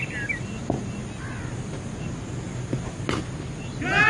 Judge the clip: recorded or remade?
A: recorded